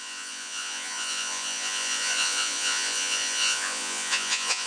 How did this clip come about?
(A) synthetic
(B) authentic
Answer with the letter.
A